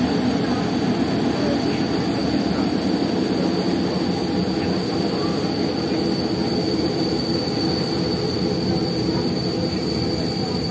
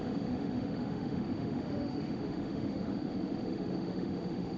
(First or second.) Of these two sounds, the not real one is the second